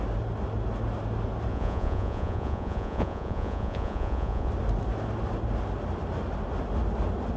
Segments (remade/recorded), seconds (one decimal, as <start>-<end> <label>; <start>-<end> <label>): 0.0-1.5 recorded; 1.5-4.5 remade; 4.5-7.4 recorded